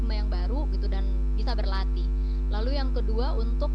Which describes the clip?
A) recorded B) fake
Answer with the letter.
A